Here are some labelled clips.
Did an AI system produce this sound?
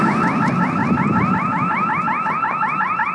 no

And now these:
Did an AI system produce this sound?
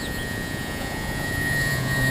yes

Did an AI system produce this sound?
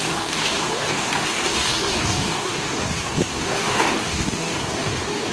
yes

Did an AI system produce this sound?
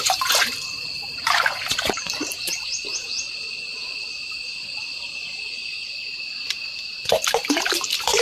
yes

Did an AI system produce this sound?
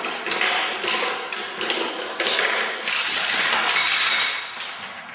no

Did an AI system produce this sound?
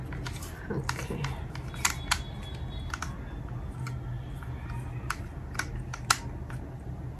no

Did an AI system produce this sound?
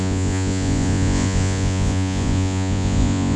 yes